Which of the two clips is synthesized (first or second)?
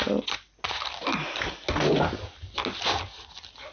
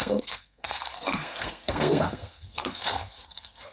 second